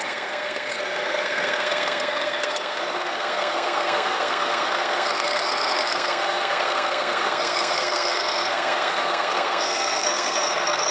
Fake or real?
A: fake